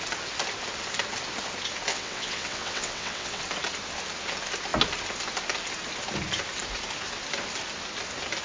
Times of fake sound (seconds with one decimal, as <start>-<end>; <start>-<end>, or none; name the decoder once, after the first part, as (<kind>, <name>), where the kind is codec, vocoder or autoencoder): 1.9-3.4 (vocoder, WaveNeXt)